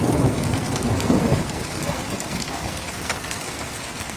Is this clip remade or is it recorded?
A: remade